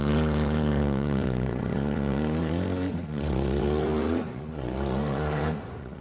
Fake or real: fake